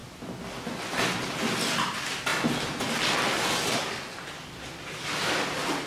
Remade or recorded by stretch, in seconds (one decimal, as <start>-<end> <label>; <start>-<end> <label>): 0.0-5.9 recorded